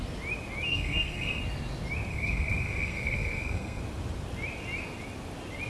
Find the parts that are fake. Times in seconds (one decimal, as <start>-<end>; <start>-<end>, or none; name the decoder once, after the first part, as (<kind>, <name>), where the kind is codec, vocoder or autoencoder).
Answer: 0.7-1.4 (codec, SNAC); 2.1-3.8